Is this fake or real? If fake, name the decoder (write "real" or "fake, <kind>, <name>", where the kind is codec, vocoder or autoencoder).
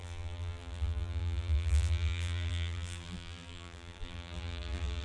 fake, vocoder, BigVGAN v2